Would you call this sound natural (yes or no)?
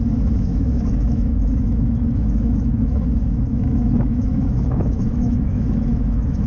no